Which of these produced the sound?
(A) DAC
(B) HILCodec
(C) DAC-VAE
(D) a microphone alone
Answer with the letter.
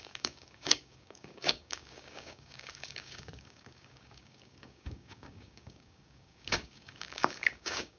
A